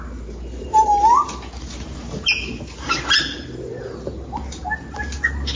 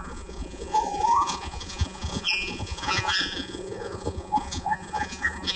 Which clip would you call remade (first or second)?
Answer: second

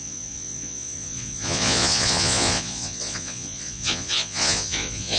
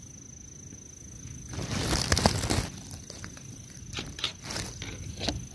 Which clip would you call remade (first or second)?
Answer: first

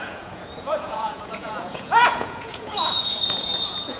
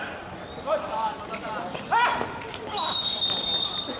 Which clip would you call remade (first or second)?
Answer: first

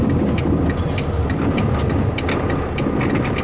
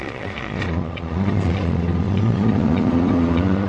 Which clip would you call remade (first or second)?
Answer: second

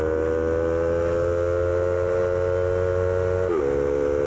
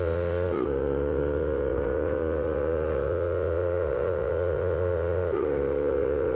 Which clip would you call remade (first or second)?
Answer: second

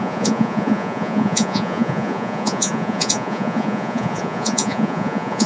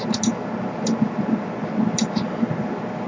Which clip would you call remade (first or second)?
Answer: first